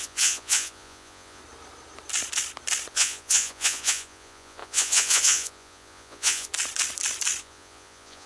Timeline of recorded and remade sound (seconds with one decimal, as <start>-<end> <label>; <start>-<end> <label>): 0.0-1.4 remade; 1.4-2.9 recorded; 2.9-6.5 remade; 6.5-7.4 recorded; 7.4-8.3 remade